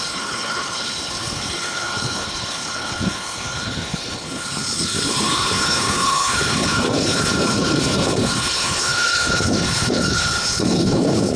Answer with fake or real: fake